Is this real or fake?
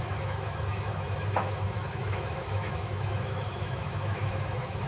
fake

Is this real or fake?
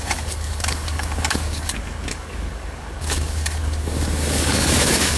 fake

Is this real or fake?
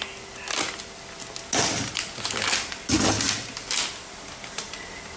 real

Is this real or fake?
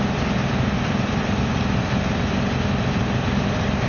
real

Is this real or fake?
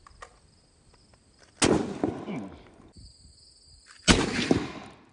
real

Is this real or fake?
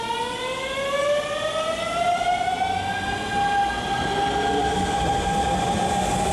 real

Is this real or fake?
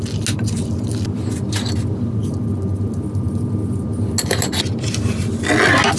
real